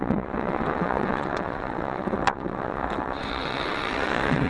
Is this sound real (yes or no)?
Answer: no